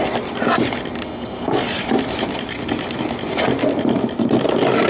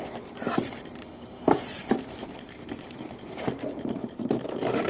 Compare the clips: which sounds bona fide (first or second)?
first